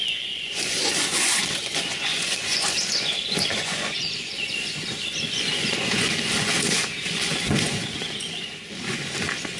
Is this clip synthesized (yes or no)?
yes